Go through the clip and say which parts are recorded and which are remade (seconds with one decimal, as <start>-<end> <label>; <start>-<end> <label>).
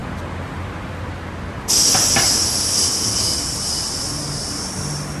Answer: 0.0-5.2 recorded